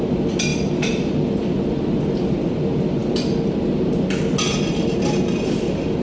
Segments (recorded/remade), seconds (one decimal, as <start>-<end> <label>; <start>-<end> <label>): 0.0-0.5 recorded; 0.5-1.8 remade; 1.8-6.0 recorded